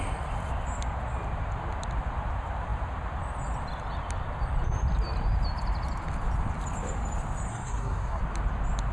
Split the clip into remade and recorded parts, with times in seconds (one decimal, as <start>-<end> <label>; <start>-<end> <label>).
0.0-7.5 recorded; 7.5-8.2 remade; 8.2-8.9 recorded